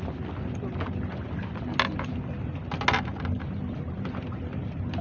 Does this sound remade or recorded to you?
recorded